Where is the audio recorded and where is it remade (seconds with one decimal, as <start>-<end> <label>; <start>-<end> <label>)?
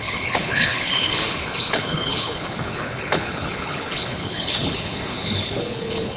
0.0-6.2 remade